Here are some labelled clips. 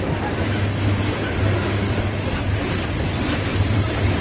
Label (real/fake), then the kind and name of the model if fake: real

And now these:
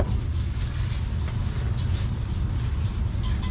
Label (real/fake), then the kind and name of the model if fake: real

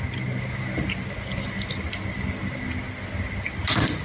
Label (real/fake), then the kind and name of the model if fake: real